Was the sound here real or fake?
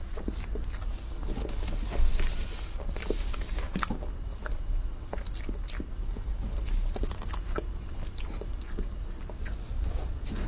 real